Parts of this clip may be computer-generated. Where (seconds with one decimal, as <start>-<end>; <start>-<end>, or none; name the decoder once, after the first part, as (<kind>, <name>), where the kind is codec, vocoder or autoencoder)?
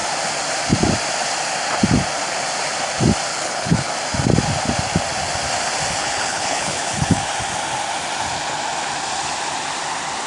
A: 3.3-3.9 (codec, HILCodec); 6.0-7.3